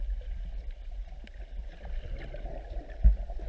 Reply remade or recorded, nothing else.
recorded